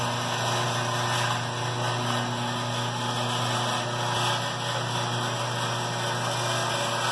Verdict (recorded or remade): recorded